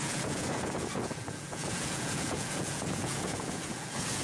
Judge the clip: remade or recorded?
remade